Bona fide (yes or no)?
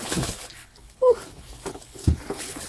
no